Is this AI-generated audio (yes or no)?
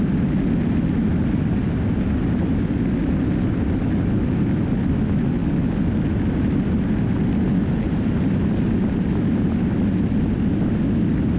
no